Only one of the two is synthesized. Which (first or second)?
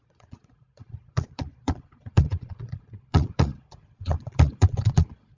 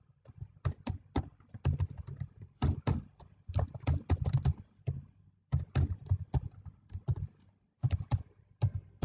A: first